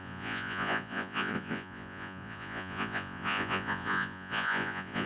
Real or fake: fake